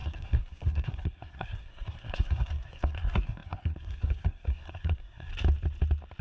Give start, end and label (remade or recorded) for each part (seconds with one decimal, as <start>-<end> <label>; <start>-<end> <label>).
0.0-5.3 remade; 5.3-6.2 recorded